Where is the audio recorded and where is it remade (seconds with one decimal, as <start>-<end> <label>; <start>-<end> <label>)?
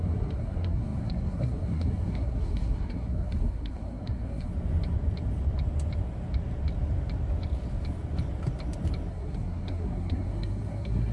0.0-4.5 remade; 4.5-9.1 recorded; 9.1-11.1 remade